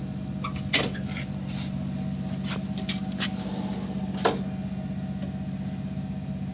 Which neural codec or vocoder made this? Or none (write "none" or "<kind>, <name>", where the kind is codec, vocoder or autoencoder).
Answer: none